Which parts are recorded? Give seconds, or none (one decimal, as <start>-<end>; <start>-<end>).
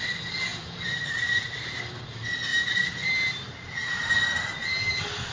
0.0-0.5; 2.0-2.5; 4.1-5.3